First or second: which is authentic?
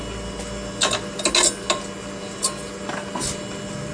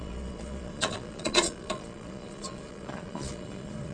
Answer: first